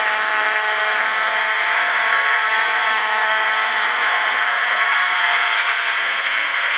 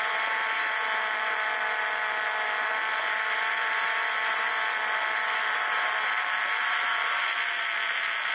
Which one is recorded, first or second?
second